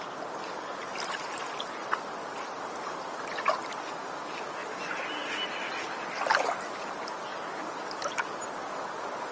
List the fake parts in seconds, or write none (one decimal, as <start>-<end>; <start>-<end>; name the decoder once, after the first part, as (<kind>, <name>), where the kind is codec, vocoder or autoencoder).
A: none